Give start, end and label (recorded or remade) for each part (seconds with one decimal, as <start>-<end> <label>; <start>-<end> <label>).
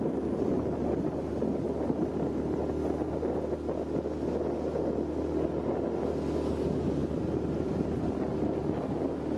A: 0.0-7.0 recorded; 7.0-8.2 remade; 8.2-9.4 recorded